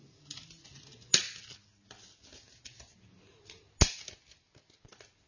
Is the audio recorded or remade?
recorded